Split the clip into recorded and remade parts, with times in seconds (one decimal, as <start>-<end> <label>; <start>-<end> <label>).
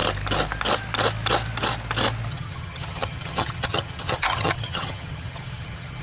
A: 0.0-2.3 recorded; 2.3-6.0 remade